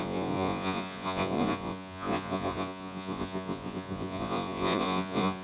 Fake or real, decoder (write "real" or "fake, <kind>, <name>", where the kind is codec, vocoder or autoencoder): fake, vocoder, Vocos